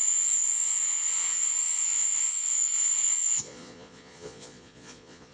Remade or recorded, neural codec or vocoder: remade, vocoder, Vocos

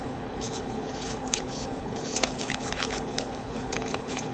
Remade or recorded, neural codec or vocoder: remade, codec, HILCodec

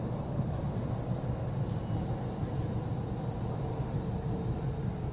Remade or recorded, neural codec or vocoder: recorded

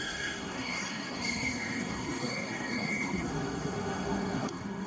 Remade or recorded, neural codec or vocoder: remade, codec, SNAC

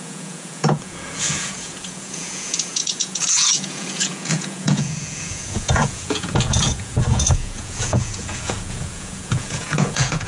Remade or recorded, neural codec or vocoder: remade, vocoder, Vocos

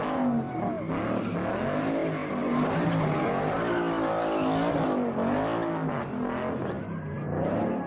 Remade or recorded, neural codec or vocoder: recorded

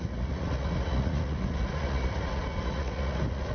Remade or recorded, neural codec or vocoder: remade, vocoder, Vocos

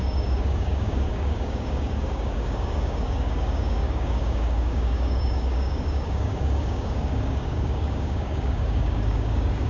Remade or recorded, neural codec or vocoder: remade, codec, DAC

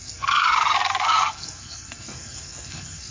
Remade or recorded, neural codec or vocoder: remade, codec, SNAC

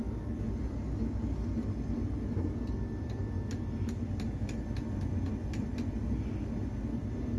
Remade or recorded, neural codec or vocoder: recorded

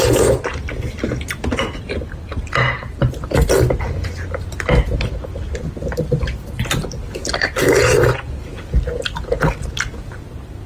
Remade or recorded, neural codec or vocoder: recorded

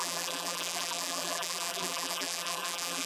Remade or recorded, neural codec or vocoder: remade, vocoder, BigVGAN v2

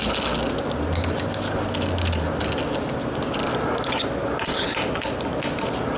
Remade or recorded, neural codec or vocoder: recorded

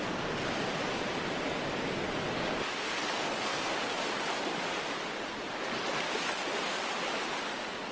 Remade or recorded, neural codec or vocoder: recorded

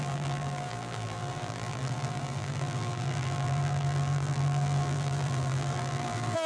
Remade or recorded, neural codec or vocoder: remade, vocoder, BigVGAN v2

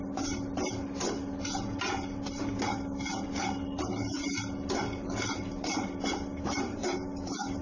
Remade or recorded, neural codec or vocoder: recorded